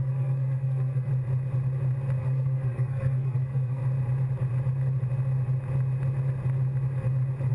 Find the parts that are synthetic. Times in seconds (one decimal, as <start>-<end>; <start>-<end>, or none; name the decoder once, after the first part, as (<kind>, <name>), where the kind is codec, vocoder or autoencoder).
0.0-1.1 (codec, SNAC); 2.2-3.8